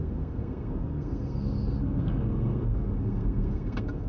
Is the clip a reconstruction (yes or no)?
yes